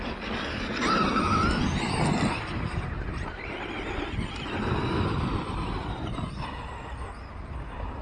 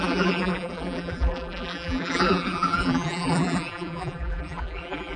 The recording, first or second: first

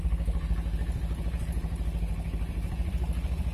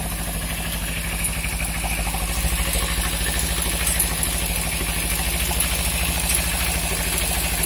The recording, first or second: second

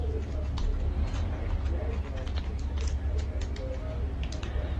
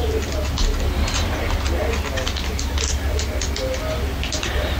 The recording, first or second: second